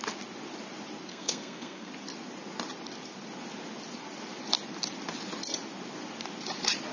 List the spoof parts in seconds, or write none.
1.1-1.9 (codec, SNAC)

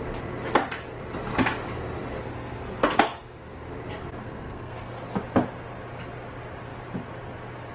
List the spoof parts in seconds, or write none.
2.2-3.7 (codec, SNAC); 4.2-4.9

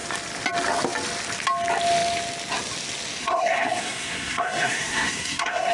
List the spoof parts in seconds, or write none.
3.2-5.7 (codec, SNAC)

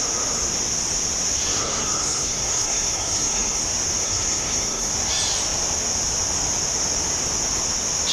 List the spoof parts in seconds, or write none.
1.6-3.6 (codec, SNAC); 4.0-4.9

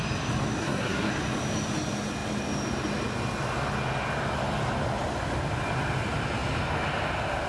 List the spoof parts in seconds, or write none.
0.6-1.1 (codec, SNAC)